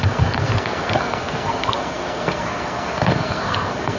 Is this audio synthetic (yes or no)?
yes